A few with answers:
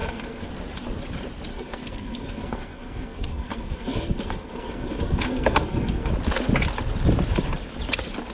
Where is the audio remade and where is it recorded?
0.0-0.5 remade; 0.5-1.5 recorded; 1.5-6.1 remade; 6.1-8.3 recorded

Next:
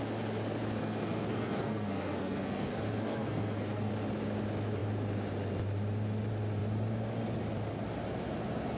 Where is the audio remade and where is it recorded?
0.0-0.8 recorded; 0.8-3.9 remade; 3.9-8.8 recorded

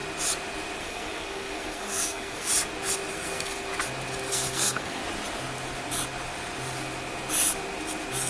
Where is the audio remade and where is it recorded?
0.0-0.8 recorded; 0.8-2.5 remade; 2.5-3.1 recorded; 3.1-3.7 remade; 3.7-4.3 recorded; 4.3-5.0 remade; 5.0-8.3 recorded

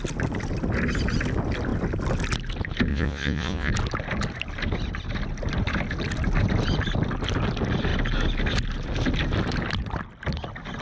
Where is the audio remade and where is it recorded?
0.0-2.9 recorded; 2.9-3.7 remade; 3.7-10.8 recorded

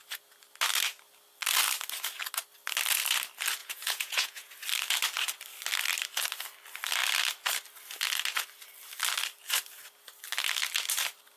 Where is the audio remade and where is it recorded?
0.0-3.6 recorded; 3.6-4.5 remade; 4.5-11.4 recorded

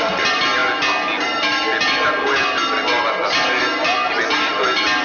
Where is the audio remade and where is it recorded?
0.0-5.0 recorded

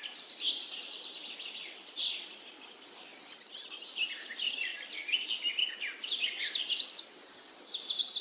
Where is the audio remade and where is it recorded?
0.0-8.2 recorded

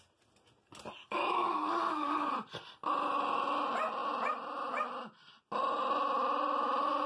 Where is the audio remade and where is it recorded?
0.0-1.0 recorded; 1.0-2.3 remade; 2.3-7.1 recorded